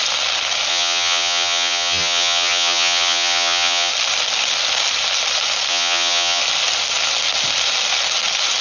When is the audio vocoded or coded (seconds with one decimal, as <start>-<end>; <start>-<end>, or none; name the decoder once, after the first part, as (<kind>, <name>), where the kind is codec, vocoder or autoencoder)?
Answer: 0.7-3.9 (vocoder, HiFi-GAN); 5.7-6.4